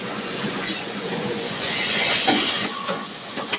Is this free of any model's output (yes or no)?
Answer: no